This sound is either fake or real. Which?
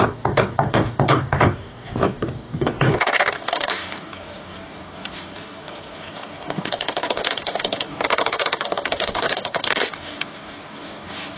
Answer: fake